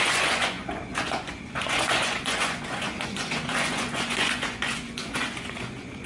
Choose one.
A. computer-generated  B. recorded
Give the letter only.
A